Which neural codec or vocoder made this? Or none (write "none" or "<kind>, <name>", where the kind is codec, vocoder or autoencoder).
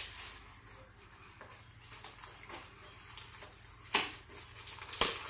none